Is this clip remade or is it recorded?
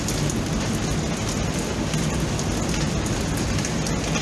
recorded